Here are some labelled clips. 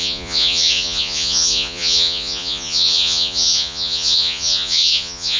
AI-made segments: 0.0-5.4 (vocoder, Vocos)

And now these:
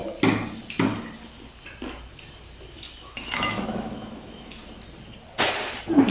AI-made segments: 2.7-4.6 (autoencoder, DAC-VAE)

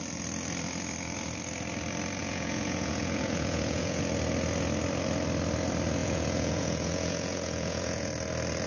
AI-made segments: 2.2-4.0 (vocoder, Vocos); 6.0-8.1